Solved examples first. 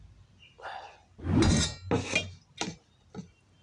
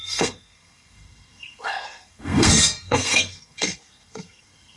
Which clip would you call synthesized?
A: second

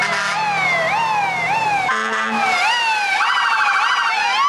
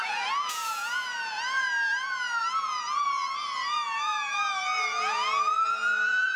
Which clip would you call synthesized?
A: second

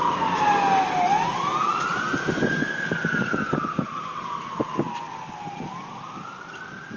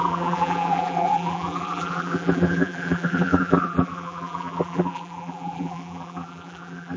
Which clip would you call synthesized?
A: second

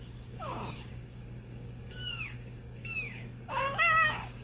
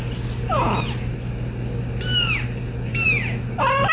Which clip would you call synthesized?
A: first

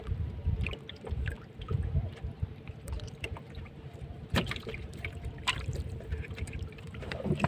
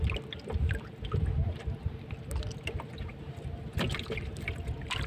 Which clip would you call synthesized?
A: first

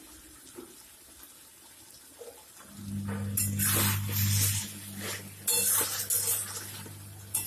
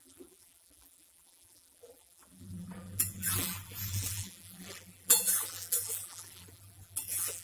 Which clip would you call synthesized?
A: second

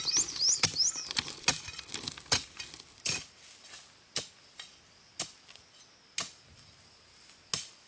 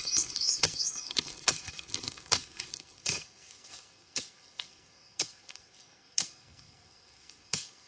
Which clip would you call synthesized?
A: second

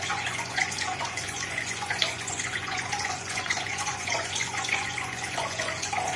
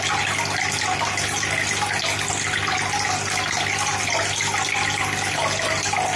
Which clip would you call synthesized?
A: first